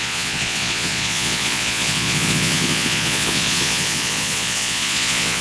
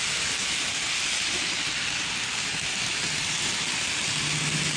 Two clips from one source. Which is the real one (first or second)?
second